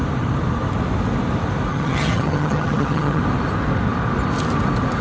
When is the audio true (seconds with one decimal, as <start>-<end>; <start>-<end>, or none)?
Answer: 0.0-1.7; 3.2-5.0